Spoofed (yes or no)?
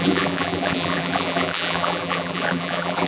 yes